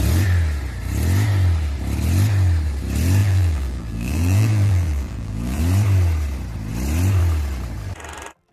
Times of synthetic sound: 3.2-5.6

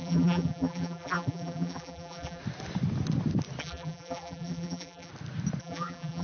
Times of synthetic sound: 0.0-2.4; 3.6-5.1; 5.6-6.2